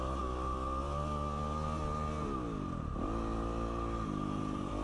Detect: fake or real real